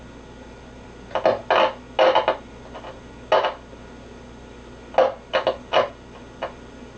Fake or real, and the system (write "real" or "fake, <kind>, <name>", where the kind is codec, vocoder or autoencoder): real